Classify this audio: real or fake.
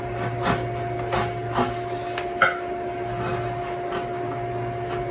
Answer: real